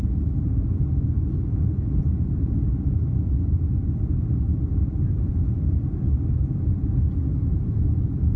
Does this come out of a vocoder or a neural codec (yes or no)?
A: no